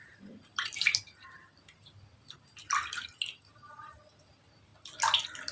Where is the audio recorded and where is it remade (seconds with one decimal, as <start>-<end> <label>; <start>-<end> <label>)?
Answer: 0.0-0.9 remade; 0.9-4.2 recorded; 4.2-4.7 remade; 4.7-5.5 recorded